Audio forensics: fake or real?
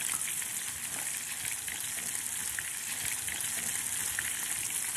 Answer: real